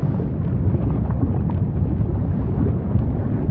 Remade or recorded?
recorded